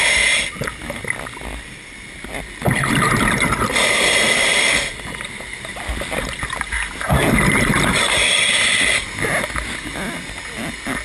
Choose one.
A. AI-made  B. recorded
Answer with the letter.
B